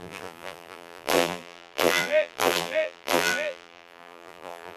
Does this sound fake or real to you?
fake